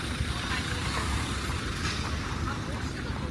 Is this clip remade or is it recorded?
remade